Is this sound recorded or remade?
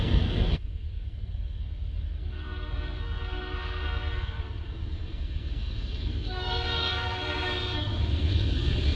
remade